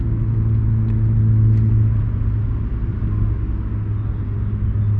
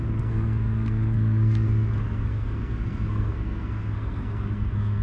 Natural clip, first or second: first